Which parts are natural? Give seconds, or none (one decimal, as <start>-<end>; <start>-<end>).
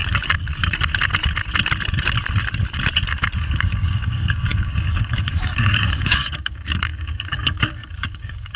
0.0-3.6